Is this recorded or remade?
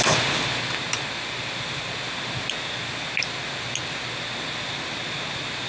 recorded